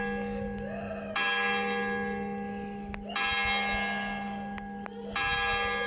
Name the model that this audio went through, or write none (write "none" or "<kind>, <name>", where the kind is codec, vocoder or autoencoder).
none